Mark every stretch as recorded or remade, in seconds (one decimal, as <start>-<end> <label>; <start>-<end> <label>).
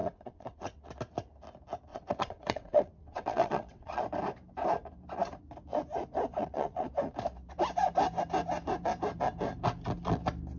0.0-0.9 remade; 0.9-1.9 recorded; 1.9-4.0 remade; 4.0-6.4 recorded; 6.4-6.9 remade; 6.9-10.6 recorded